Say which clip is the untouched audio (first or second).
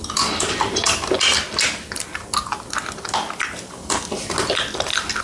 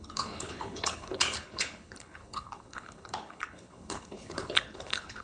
first